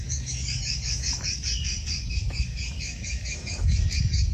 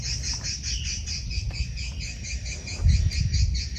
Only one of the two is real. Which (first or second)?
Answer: second